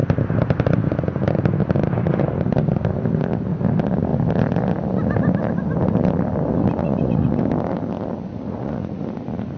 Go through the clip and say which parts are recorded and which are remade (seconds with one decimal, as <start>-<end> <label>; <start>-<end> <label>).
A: 0.0-6.8 recorded; 6.8-7.4 remade; 7.4-8.3 recorded; 8.3-9.1 remade; 9.1-9.6 recorded